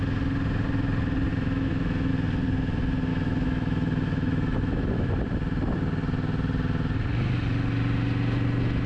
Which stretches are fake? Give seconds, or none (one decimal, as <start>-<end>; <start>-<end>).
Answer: 1.3-2.1; 3.1-5.1

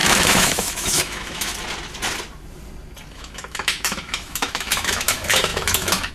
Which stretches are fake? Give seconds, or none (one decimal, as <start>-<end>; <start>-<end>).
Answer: 0.0-1.5; 3.1-6.1

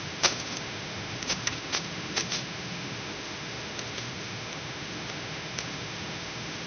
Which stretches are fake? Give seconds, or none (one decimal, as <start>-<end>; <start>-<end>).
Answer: 0.0-6.7

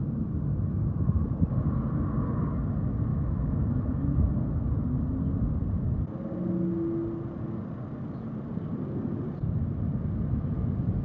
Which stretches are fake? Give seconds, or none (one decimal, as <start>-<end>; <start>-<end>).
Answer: 3.1-4.3

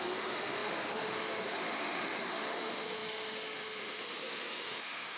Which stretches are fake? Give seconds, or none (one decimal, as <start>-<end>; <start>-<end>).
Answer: 0.0-5.2

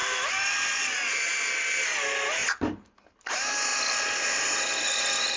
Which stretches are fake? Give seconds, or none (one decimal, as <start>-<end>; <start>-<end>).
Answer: none

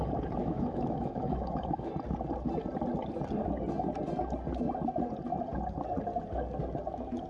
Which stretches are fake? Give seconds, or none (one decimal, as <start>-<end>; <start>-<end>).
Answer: 0.4-1.9